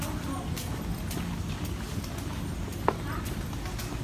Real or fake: real